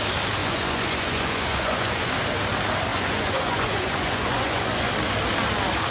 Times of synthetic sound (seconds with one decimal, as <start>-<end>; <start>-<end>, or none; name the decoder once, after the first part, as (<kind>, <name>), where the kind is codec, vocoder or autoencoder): 0.4-2.1 (vocoder, Vocos); 2.9-4.9